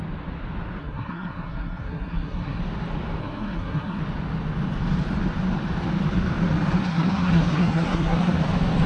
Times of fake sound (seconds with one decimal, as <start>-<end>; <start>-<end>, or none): 0.8-2.6; 3.2-4.0; 6.8-8.4